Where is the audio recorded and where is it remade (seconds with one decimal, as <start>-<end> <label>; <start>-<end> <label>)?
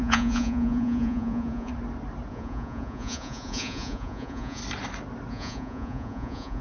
0.0-1.7 remade; 1.7-2.3 recorded; 2.3-4.6 remade; 4.6-5.3 recorded; 5.3-6.6 remade